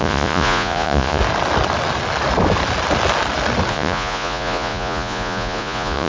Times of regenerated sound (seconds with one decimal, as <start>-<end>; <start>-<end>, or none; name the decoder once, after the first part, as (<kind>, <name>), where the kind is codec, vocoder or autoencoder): 0.0-1.2 (vocoder, Vocos); 3.7-6.1